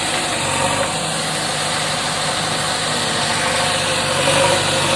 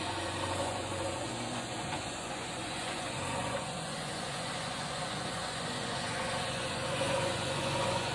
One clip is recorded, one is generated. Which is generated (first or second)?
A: second